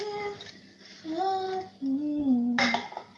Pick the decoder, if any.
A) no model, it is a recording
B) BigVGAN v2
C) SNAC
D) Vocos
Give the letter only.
A